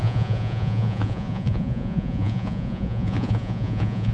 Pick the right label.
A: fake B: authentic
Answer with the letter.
A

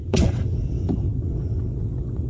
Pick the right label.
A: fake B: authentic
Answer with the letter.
A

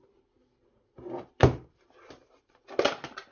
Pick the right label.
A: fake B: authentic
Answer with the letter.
B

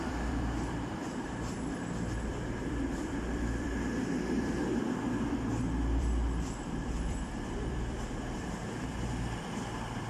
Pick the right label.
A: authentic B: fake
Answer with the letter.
B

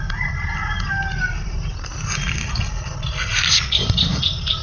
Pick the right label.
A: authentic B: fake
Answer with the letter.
A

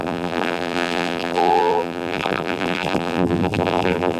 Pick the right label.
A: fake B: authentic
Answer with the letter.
A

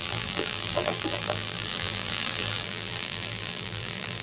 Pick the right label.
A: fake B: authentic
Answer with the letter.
A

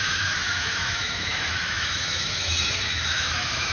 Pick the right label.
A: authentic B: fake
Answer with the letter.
B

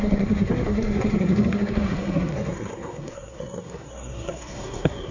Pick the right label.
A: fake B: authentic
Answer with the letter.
A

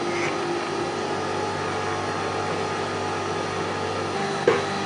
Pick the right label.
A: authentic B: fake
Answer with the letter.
A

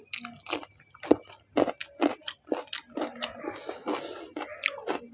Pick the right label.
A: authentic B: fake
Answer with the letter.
A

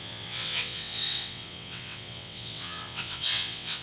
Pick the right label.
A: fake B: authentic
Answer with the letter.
A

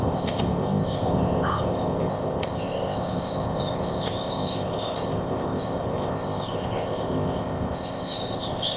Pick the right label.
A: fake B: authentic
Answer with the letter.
A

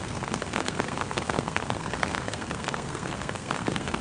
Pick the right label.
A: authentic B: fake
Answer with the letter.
B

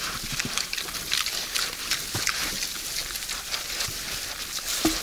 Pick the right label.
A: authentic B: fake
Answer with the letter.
A